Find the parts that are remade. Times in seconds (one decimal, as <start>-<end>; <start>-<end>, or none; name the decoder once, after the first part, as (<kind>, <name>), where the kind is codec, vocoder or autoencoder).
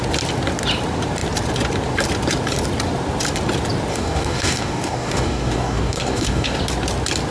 3.9-6.6 (codec, DAC)